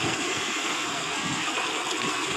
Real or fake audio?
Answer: fake